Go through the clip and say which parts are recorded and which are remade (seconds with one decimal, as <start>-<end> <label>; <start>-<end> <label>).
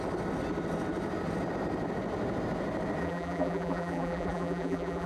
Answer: 0.0-3.0 recorded; 3.0-5.1 remade